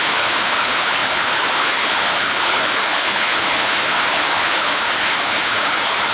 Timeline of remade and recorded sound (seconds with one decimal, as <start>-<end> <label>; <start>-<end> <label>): 0.0-6.1 remade